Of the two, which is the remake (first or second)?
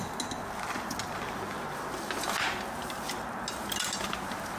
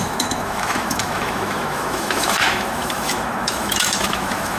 second